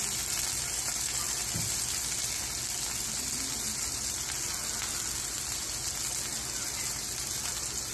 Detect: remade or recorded recorded